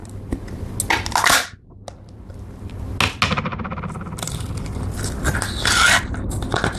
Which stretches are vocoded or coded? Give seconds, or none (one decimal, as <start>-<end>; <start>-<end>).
none